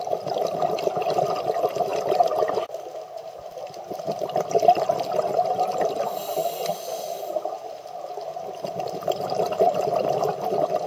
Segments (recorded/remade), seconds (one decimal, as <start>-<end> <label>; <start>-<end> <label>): 0.0-10.9 recorded